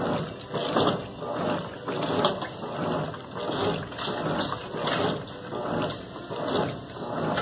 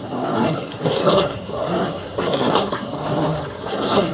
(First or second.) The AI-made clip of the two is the second